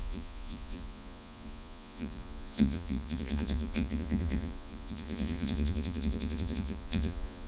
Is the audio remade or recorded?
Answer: remade